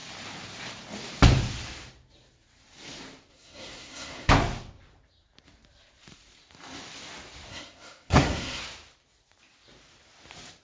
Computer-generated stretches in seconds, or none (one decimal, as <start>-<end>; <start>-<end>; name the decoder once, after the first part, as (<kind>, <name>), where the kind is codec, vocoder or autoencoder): 3.3-4.3 (codec, SNAC); 7.5-8.6